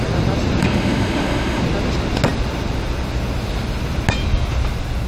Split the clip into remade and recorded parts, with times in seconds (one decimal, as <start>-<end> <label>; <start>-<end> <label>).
0.0-0.6 recorded; 0.6-1.6 remade; 1.6-5.1 recorded

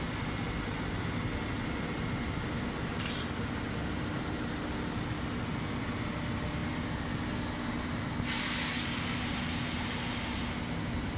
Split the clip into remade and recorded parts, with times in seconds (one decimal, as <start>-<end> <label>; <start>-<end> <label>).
0.0-11.2 recorded

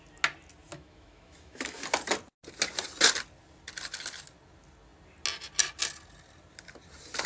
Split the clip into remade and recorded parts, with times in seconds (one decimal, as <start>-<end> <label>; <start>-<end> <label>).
0.0-0.7 recorded; 0.7-1.8 remade; 1.8-7.3 recorded

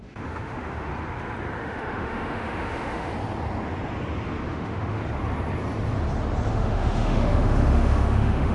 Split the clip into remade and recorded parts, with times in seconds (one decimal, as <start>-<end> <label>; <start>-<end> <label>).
0.0-0.9 remade; 0.9-1.6 recorded; 1.6-3.1 remade; 3.1-4.5 recorded; 4.5-5.0 remade; 5.0-6.5 recorded; 6.5-8.5 remade

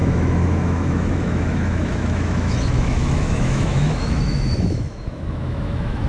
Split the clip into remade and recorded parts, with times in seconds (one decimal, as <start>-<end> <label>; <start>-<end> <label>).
0.0-6.1 remade

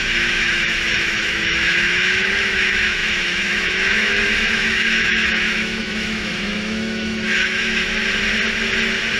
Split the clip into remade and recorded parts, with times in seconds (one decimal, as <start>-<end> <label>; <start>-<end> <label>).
0.0-8.0 remade; 8.0-9.2 recorded

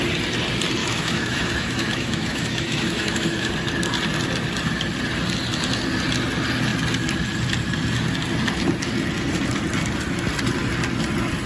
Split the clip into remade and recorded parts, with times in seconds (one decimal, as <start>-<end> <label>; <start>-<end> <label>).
0.0-0.8 recorded; 0.8-3.5 remade; 3.5-11.5 recorded